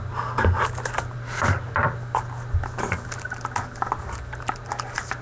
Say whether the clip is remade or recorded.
recorded